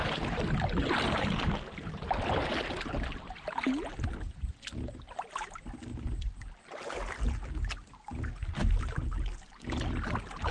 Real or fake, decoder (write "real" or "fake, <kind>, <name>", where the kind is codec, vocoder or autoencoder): real